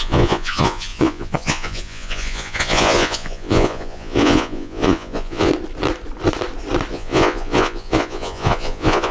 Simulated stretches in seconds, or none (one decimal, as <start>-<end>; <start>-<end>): 0.0-5.5; 6.9-9.1